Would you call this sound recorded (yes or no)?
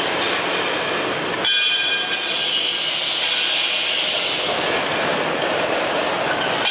yes